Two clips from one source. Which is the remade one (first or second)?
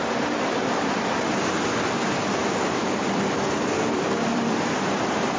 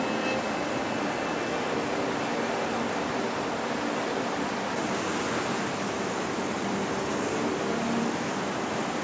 first